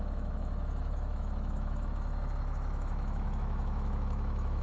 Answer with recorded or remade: remade